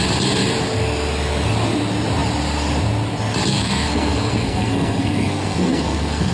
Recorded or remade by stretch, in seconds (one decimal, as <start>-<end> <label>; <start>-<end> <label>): 0.0-3.5 recorded; 3.5-6.3 remade